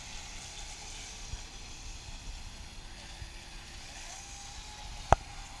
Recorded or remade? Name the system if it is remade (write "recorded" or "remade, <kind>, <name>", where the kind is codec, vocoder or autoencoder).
recorded